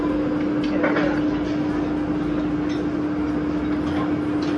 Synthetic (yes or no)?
no